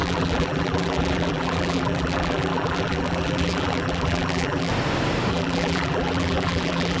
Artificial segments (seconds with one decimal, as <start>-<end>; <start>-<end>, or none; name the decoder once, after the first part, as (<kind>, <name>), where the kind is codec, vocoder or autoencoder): 0.0-4.7 (vocoder, BigVGAN v2); 5.3-7.0

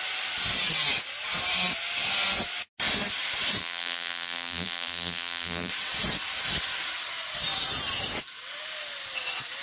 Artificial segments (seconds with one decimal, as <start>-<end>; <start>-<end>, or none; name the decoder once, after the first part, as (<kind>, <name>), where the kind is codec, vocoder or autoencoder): 3.6-5.7 (vocoder, BigVGAN v2)

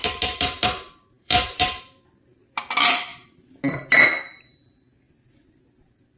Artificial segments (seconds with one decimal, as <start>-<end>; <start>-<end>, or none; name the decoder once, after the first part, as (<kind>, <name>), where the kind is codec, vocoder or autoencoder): 0.0-1.8 (vocoder, BigVGAN v2)

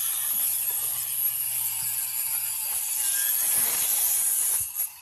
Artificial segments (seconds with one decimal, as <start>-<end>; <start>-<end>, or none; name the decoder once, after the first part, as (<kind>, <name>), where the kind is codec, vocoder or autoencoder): none